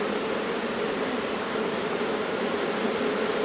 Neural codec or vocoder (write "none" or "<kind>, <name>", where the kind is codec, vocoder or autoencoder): vocoder, BigVGAN v2